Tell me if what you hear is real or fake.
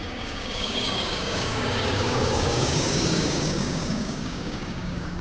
fake